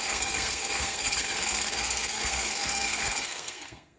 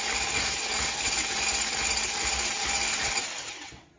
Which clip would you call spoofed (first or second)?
first